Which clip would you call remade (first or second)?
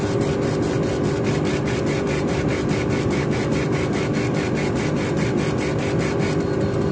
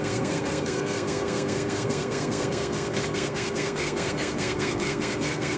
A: second